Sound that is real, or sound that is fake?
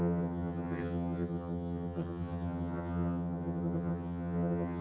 fake